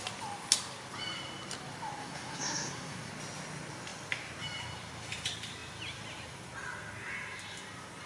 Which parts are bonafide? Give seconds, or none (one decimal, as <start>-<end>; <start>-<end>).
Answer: 0.0-2.0; 3.1-8.1